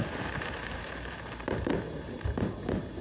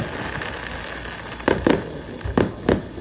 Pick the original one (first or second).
second